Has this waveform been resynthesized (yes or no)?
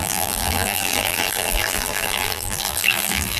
yes